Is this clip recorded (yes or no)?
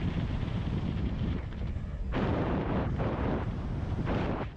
no